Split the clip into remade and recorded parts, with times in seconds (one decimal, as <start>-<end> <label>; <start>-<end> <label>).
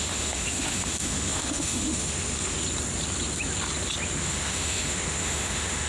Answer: 0.0-2.5 remade; 2.5-4.2 recorded; 4.2-5.9 remade